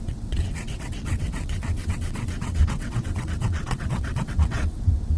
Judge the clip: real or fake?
fake